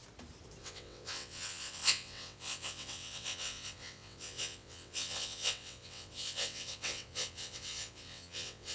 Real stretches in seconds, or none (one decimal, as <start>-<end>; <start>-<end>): 0.0-0.6